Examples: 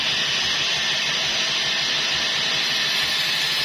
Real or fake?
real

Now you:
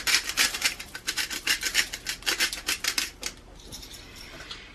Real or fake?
fake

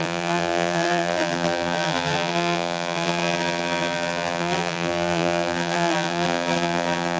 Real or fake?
fake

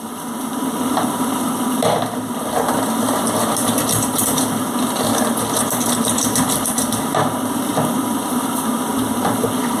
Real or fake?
fake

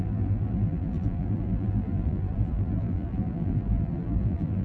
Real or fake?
fake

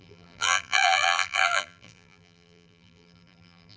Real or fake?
fake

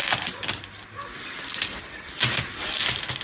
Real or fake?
fake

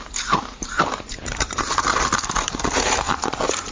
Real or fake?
fake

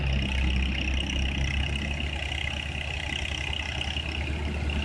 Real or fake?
real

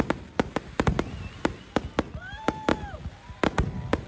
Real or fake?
real